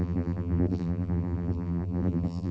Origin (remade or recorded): remade